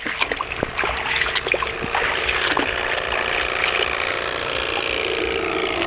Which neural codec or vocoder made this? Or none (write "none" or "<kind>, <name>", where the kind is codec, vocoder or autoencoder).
none